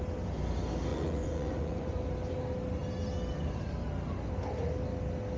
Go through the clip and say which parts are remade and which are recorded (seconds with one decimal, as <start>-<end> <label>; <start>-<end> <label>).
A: 0.0-0.9 recorded; 0.9-2.0 remade; 2.0-5.4 recorded